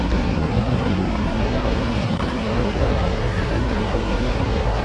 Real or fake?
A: fake